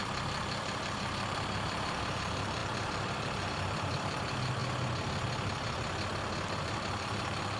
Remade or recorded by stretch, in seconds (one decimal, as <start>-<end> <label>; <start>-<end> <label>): 0.0-4.6 remade; 4.6-6.6 recorded; 6.6-7.6 remade